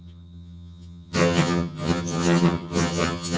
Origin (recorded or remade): remade